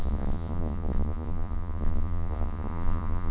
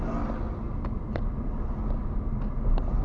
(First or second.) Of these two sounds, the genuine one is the second